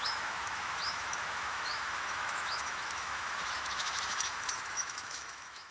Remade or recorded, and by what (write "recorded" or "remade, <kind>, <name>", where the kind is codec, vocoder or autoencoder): remade, autoencoder, DAC-VAE